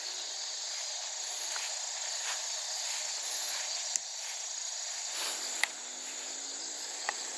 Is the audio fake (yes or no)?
no